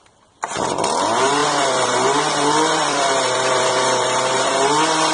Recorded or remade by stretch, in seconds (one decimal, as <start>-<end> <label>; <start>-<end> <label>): 0.0-1.4 recorded; 1.4-4.5 remade; 4.5-5.1 recorded